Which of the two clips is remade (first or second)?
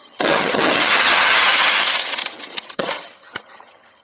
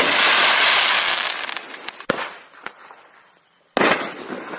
first